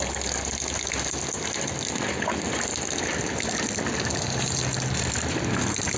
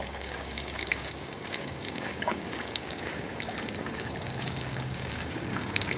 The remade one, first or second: second